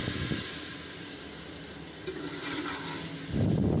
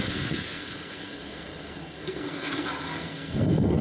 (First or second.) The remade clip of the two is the second